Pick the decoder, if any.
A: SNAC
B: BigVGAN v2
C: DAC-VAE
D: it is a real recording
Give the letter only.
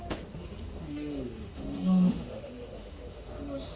C